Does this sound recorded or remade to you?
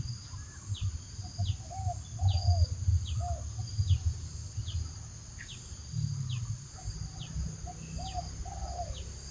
recorded